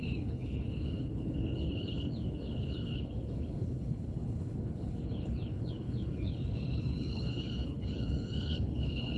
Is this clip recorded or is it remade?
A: remade